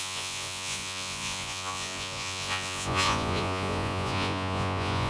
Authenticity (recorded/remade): remade